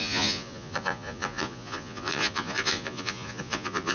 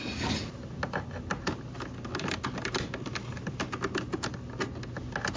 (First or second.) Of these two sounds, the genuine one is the second